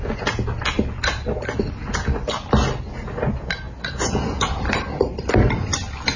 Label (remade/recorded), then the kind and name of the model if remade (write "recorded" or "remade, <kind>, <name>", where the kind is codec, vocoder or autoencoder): recorded